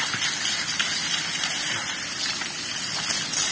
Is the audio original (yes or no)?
yes